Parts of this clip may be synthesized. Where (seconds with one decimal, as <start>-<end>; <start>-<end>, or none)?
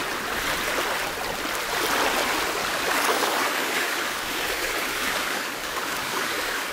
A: 2.6-6.7